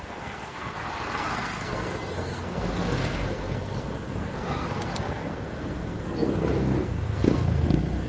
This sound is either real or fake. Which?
fake